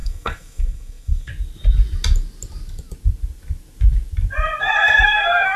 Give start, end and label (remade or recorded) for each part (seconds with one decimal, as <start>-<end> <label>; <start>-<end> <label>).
0.0-1.3 remade; 1.3-4.6 recorded; 4.6-5.6 remade